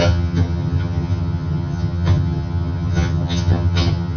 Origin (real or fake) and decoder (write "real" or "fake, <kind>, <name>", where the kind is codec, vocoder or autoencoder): fake, vocoder, HiFi-GAN